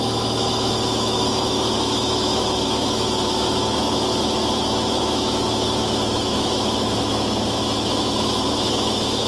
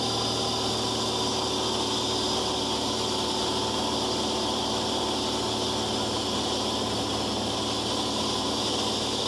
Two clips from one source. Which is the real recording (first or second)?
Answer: second